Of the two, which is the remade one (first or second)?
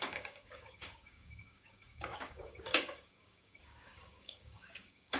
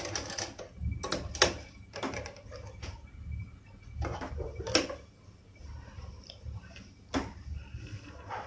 first